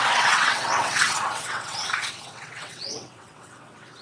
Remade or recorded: remade